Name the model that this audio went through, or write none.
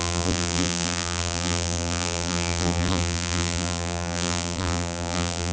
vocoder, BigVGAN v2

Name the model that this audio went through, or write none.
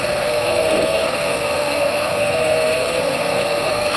codec, SNAC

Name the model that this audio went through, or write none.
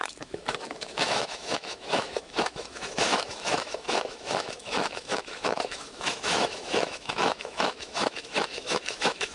autoencoder, DAC-VAE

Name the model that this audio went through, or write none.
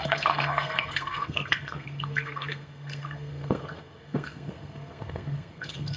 codec, SNAC